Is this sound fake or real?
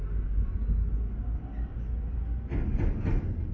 real